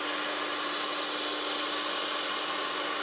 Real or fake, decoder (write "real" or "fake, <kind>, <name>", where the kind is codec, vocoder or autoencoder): real